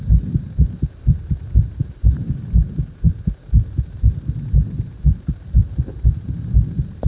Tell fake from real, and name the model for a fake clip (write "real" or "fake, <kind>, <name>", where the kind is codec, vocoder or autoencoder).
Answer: real